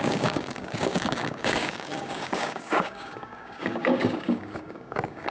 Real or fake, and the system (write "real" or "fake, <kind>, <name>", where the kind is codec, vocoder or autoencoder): fake, codec, DAC